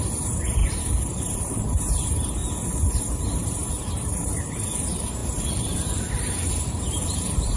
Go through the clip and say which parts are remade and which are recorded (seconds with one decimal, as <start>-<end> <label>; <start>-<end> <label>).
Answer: 0.0-2.4 remade; 2.4-3.0 recorded; 3.0-7.6 remade